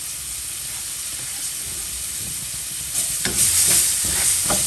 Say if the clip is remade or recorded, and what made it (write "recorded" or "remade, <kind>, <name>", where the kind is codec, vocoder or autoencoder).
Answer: recorded